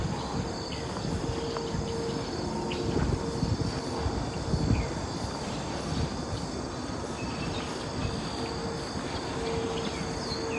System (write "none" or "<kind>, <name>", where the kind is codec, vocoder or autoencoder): none